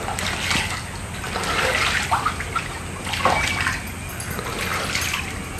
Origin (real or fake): real